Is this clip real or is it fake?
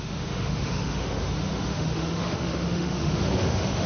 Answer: fake